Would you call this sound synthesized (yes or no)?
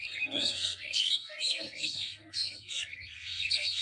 yes